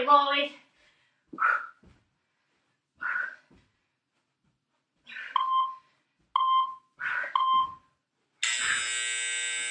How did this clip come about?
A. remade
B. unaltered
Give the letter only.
B